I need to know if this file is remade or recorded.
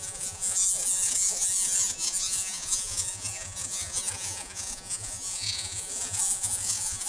remade